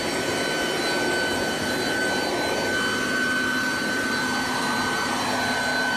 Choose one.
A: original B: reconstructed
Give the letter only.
A